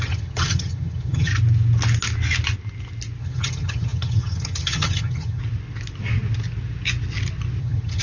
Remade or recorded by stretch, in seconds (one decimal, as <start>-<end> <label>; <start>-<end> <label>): 0.0-1.3 remade; 1.3-3.2 recorded; 3.2-5.4 remade; 5.4-7.6 recorded; 7.6-8.0 remade